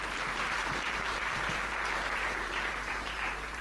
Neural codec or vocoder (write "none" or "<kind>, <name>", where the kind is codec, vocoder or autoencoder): vocoder, BigVGAN v2